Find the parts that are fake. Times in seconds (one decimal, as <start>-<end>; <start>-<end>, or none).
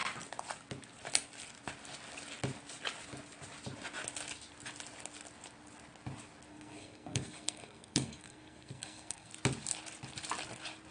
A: 6.5-9.3